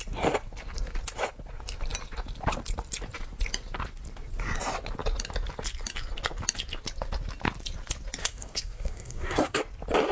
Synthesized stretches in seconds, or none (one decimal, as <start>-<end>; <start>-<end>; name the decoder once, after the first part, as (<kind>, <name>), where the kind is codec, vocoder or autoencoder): 8.2-9.6 (codec, SNAC)